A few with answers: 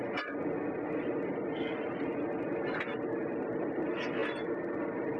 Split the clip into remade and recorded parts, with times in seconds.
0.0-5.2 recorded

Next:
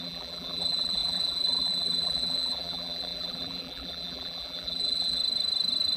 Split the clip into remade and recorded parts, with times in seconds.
0.0-5.2 remade; 5.2-6.0 recorded

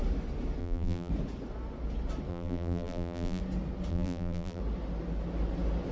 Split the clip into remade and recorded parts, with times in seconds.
0.0-0.6 recorded; 0.6-1.1 remade; 1.1-2.3 recorded; 2.3-3.4 remade; 3.4-3.9 recorded; 3.9-4.6 remade; 4.6-5.9 recorded

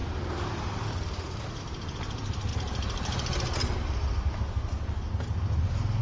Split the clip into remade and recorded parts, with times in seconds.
0.0-1.6 remade; 1.6-6.0 recorded

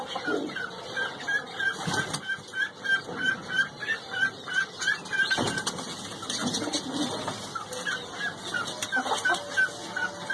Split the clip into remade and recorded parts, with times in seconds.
0.0-10.3 recorded

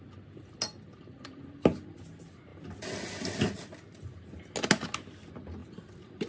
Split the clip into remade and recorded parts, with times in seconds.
0.0-5.6 recorded; 5.6-6.3 remade

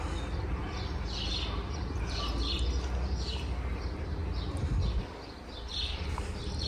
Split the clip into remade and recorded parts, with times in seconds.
0.0-6.7 recorded

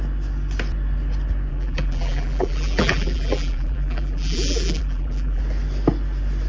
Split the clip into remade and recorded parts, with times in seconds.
0.0-1.5 recorded; 1.5-5.4 remade; 5.4-6.5 recorded